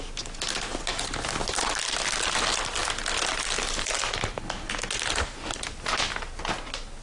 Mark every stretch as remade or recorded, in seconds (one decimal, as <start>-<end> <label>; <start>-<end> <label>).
0.0-7.0 recorded